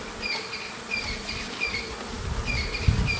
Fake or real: real